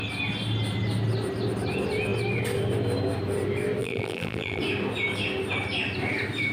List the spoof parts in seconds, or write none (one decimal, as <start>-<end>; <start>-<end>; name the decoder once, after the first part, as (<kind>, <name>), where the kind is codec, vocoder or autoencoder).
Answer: 3.8-4.6 (vocoder, BigVGAN v2)